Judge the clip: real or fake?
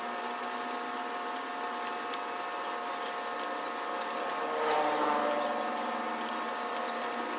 real